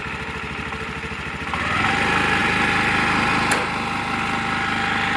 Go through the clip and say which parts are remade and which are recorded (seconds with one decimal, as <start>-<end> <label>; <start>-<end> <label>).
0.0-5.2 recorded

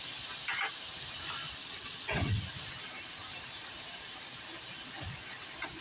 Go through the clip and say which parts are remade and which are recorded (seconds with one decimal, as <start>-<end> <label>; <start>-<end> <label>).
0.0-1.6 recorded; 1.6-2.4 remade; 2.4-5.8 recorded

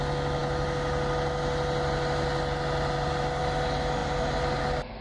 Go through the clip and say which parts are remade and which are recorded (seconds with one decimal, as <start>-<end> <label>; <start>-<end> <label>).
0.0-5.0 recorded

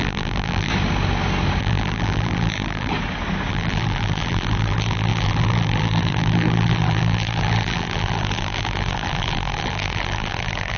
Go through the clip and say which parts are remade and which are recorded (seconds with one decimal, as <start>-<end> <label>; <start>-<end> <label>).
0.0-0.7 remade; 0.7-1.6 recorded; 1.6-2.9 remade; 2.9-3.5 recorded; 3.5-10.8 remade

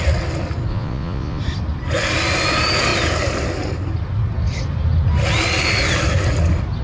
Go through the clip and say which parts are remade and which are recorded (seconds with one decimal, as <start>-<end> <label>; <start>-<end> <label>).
0.0-0.7 recorded; 0.7-1.4 remade; 1.4-6.8 recorded

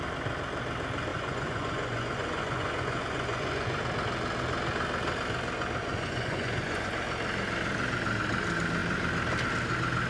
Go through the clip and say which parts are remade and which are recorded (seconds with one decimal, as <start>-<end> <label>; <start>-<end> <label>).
0.0-1.1 recorded; 1.1-3.8 remade; 3.8-5.8 recorded; 5.8-6.9 remade; 6.9-10.1 recorded

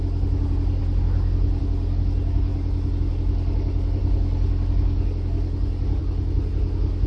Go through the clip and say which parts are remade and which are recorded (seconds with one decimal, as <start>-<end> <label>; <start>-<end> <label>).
0.0-7.1 recorded